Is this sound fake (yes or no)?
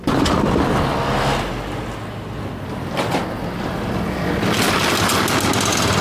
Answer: no